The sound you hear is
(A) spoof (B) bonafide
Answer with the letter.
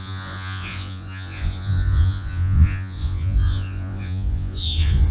A